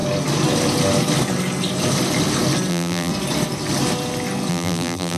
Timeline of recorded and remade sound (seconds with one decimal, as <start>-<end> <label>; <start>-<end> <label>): 0.0-2.7 recorded; 2.7-3.1 remade; 3.1-4.5 recorded; 4.5-5.2 remade